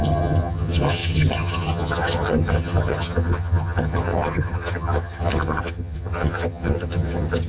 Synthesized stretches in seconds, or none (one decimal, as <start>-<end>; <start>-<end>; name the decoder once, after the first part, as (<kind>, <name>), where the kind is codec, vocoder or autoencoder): 0.0-7.5 (vocoder, HiFi-GAN)